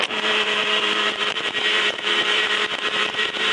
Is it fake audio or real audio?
fake